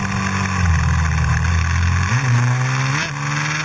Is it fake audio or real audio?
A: real